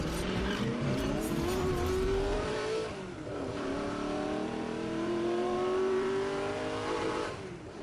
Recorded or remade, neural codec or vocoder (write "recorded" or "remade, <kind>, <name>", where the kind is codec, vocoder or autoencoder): remade, vocoder, BigVGAN v2